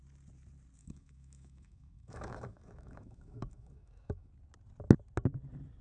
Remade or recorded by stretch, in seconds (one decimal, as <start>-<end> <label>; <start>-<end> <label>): 0.0-0.8 recorded; 0.8-4.3 remade; 4.3-5.8 recorded